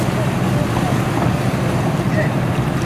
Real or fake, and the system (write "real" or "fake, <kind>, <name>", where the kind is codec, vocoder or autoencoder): fake, vocoder, BigVGAN v2